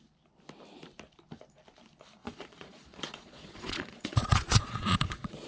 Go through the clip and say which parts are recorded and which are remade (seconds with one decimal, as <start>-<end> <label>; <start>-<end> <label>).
0.0-2.2 recorded; 2.2-5.5 remade